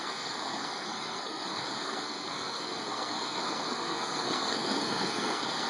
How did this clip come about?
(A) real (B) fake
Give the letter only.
B